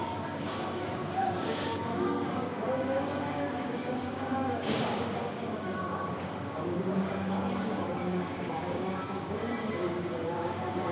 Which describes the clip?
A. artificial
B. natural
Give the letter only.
A